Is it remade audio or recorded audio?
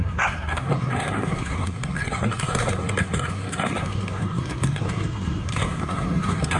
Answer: remade